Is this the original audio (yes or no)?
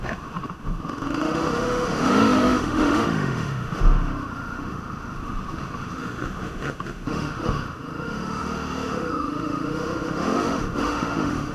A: no